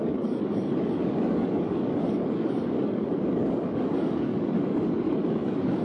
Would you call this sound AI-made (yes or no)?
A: yes